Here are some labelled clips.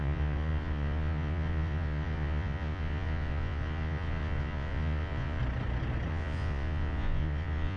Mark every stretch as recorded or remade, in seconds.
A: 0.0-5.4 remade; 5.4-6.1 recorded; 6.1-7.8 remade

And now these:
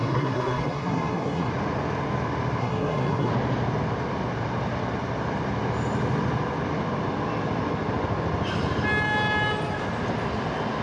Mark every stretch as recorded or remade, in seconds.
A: 0.0-1.5 remade; 1.5-2.6 recorded; 2.6-3.3 remade; 3.3-10.8 recorded